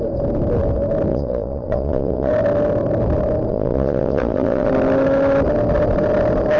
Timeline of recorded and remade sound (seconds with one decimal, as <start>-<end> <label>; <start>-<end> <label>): 0.0-1.1 recorded; 1.1-2.3 remade; 2.3-3.5 recorded; 3.5-4.7 remade; 4.7-6.6 recorded